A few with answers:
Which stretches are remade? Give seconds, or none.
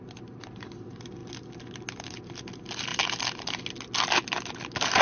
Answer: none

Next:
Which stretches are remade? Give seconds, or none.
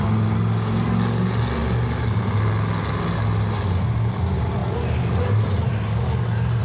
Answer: none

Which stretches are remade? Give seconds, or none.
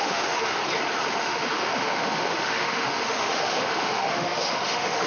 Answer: 0.0-0.6 (autoencoder, DAC-VAE); 1.2-5.1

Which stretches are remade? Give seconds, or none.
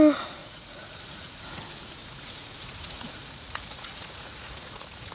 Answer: 0.4-1.6 (vocoder, Vocos); 2.0-5.1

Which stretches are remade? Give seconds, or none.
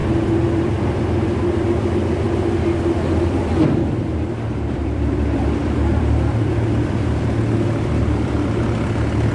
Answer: 0.0-9.3 (vocoder, BigVGAN v2)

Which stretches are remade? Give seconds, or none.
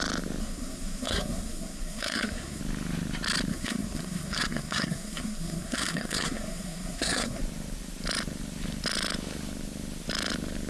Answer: 0.4-2.6 (codec, SNAC); 3.5-7.4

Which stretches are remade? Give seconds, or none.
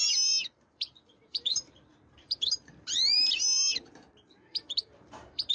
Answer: 0.0-5.5 (vocoder, BigVGAN v2)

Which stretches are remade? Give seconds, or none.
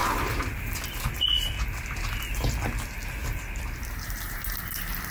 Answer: 3.2-4.4 (vocoder, BigVGAN v2)